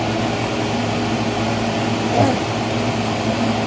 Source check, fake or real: real